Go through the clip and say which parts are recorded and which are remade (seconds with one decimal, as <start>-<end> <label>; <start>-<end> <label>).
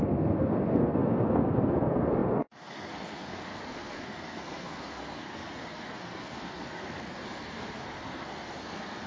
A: 0.0-9.1 remade